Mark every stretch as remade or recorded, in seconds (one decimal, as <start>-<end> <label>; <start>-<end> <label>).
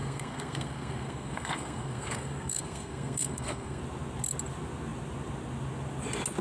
0.0-3.8 remade; 3.8-6.4 recorded